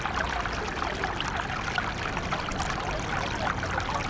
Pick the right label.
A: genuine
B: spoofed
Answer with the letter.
A